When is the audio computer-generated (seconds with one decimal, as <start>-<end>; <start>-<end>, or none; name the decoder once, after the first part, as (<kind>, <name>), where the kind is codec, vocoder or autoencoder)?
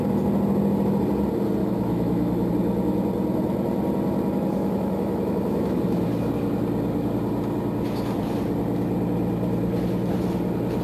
1.6-2.5 (autoencoder, DAC-VAE); 4.5-6.0